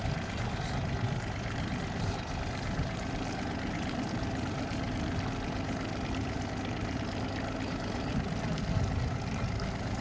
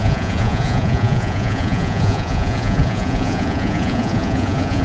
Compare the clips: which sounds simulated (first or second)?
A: second